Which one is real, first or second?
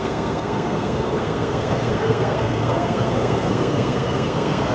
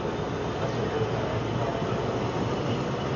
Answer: second